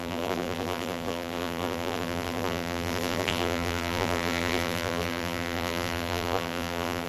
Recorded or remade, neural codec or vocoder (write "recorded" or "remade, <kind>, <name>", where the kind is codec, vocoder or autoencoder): remade, vocoder, BigVGAN v2